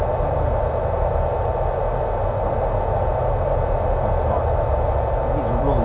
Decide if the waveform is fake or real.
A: real